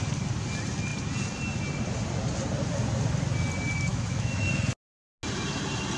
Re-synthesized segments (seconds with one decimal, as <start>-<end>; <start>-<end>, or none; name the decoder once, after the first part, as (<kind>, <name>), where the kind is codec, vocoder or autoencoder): 3.9-4.5 (autoencoder, DAC-VAE)